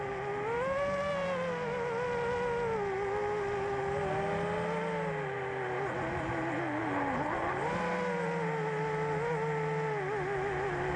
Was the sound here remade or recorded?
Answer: recorded